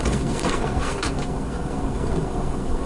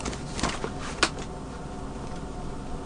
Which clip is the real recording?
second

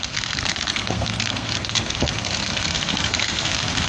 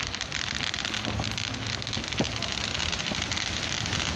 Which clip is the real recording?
second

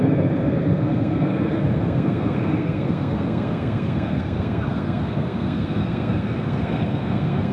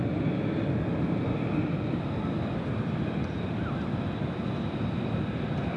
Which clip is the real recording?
second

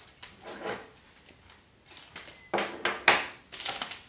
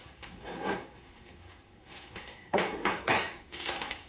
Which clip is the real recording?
first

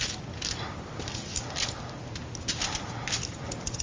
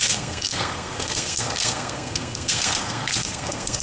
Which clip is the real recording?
first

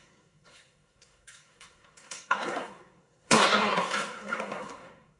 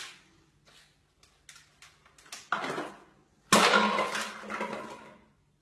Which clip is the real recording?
second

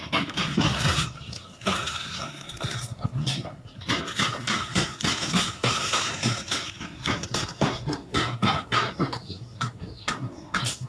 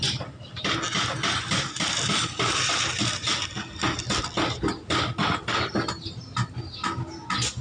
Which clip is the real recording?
second